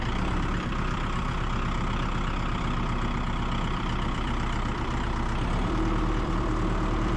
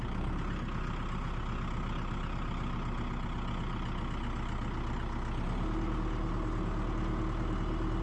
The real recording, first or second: second